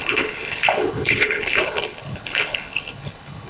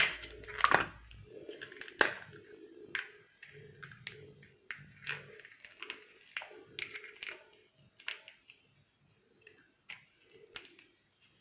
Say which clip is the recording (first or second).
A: second